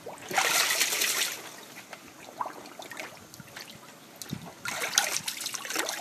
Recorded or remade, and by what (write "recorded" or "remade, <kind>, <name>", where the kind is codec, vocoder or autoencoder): recorded